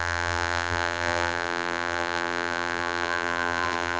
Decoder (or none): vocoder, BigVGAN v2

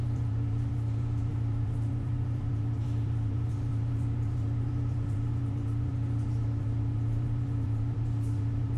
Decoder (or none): vocoder, BigVGAN v2